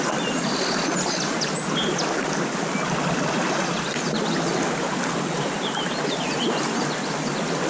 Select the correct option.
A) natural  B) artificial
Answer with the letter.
A